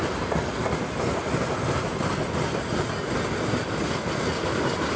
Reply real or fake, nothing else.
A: real